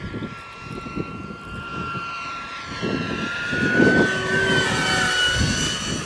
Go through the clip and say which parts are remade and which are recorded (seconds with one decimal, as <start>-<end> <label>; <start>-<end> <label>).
0.0-6.1 recorded